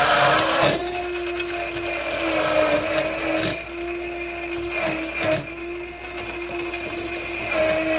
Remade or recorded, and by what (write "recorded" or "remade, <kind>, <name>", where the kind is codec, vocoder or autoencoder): recorded